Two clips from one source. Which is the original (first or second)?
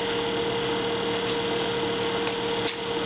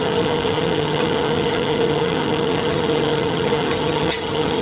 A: first